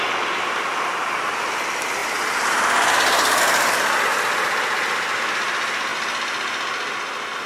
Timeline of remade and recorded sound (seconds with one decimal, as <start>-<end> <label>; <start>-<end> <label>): 0.0-7.5 recorded